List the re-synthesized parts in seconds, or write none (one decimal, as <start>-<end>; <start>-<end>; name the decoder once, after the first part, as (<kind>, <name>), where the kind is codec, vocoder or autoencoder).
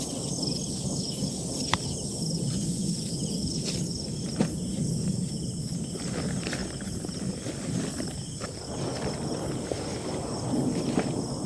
2.1-3.2 (vocoder, Vocos)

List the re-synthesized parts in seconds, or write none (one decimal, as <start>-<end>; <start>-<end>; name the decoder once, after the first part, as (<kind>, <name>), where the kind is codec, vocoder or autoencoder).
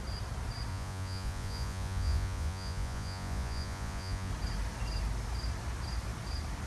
0.7-4.3 (vocoder, Vocos)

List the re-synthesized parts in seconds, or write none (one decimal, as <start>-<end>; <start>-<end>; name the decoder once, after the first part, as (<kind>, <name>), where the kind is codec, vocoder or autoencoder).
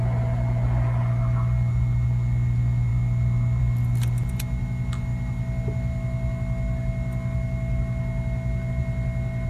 none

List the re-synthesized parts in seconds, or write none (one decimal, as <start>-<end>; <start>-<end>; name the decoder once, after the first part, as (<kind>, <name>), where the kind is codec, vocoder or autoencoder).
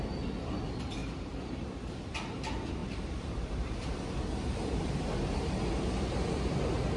1.0-1.9 (vocoder, BigVGAN v2); 2.8-5.0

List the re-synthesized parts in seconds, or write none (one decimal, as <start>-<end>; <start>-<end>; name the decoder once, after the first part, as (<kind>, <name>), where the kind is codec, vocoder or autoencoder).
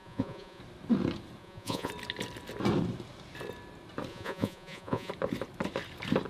0.0-0.6 (vocoder, Vocos); 1.4-1.9; 4.1-5.1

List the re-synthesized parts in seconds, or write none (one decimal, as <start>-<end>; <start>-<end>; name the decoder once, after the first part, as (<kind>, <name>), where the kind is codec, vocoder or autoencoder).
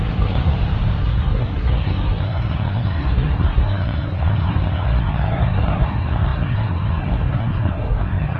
0.0-0.5 (codec, SNAC); 1.0-8.4